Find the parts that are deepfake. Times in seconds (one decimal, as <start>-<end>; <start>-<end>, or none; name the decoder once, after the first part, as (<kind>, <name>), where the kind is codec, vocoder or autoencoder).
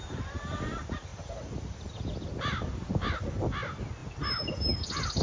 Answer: none